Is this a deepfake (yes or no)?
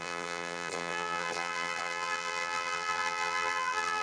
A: yes